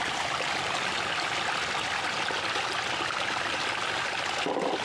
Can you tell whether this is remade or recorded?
recorded